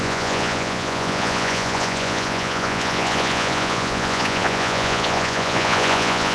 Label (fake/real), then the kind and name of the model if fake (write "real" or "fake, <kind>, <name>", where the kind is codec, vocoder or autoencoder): fake, vocoder, Vocos